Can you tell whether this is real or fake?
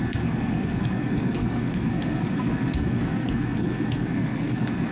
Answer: fake